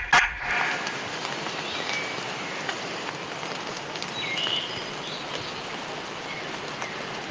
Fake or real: real